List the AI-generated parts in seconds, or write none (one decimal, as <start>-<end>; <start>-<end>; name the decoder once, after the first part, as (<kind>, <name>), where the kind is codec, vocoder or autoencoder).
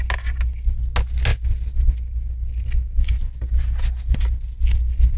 none